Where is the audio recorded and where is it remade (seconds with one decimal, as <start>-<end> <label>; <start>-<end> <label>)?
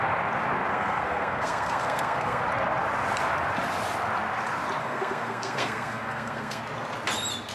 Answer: 0.0-0.7 recorded; 0.7-2.4 remade; 2.4-4.8 recorded; 4.8-6.6 remade; 6.6-7.5 recorded